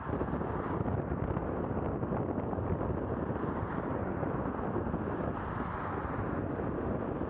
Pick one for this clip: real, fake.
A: real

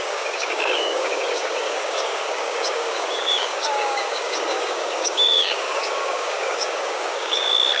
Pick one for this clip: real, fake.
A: fake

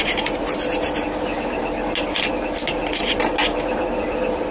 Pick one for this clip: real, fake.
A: real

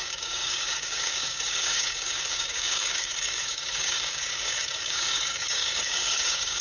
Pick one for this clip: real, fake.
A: fake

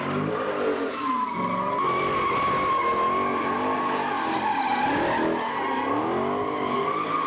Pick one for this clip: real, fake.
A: real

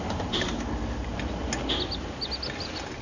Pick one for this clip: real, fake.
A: real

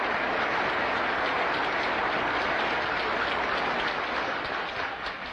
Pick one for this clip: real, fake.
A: real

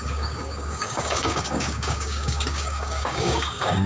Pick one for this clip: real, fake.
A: fake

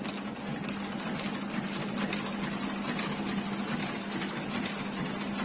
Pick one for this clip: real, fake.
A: real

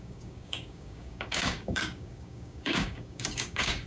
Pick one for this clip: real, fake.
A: fake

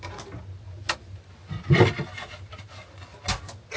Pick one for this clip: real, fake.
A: real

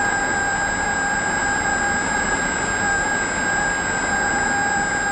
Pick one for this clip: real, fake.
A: real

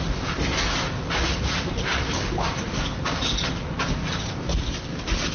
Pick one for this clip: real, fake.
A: real